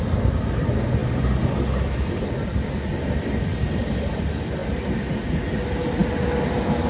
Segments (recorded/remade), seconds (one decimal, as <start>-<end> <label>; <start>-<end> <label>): 0.0-6.9 recorded